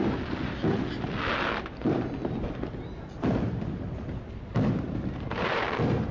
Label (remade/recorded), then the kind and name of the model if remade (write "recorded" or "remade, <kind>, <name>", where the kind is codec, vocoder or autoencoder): recorded